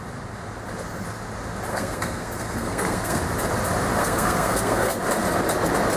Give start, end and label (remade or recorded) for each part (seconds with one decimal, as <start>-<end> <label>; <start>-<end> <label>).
0.0-1.7 recorded; 1.7-3.2 remade; 3.2-4.0 recorded; 4.0-5.0 remade; 5.0-6.0 recorded